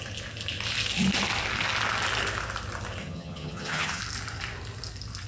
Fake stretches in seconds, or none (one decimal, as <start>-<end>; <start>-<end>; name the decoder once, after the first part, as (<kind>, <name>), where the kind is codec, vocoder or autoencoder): 3.0-4.0 (vocoder, HiFi-GAN)

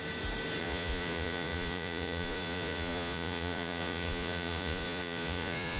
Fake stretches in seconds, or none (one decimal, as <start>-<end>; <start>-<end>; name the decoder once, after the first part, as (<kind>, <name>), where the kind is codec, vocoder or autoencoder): 0.6-5.8 (vocoder, Vocos)

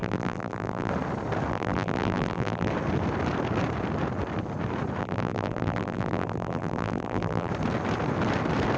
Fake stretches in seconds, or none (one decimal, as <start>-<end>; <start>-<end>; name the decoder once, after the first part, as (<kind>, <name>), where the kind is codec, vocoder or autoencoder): 0.0-0.9 (vocoder, BigVGAN v2); 1.5-2.7; 5.0-7.5

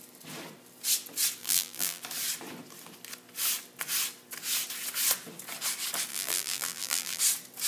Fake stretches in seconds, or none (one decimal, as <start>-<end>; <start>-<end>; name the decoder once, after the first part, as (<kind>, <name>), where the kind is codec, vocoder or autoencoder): 1.4-2.0 (vocoder, BigVGAN v2); 6.1-7.2